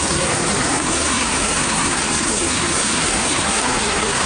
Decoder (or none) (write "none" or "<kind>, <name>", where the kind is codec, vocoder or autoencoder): codec, SNAC